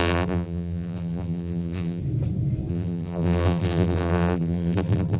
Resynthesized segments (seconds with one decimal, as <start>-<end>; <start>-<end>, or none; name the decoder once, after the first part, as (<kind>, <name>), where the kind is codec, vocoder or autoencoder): 0.0-2.0 (vocoder, BigVGAN v2); 2.7-5.2